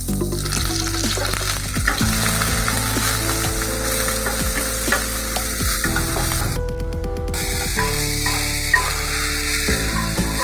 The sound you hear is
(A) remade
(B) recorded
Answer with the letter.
B